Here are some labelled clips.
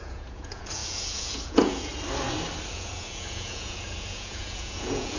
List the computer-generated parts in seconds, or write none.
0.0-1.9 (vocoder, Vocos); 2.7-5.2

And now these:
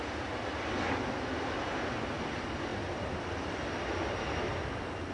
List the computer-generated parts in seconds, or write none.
none

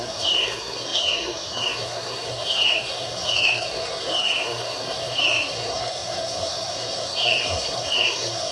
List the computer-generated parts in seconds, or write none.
0.0-8.5 (codec, SNAC)

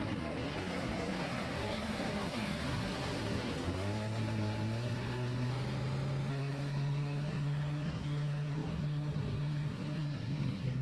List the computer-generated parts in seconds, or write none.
0.0-5.5 (codec, SNAC); 6.3-10.8

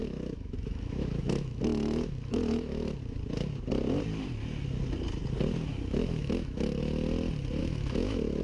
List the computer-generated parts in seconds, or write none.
0.0-3.0 (autoencoder, DAC-VAE); 5.7-6.8; 7.6-8.4

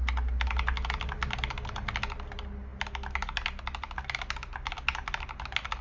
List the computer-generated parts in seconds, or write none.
none

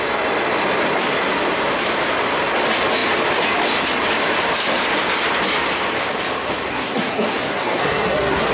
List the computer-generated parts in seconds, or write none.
6.7-8.5 (codec, SNAC)